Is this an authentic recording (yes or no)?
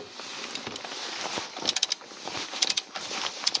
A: yes